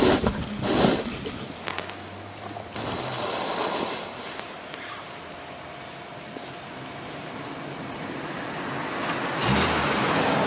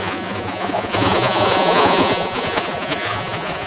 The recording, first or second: first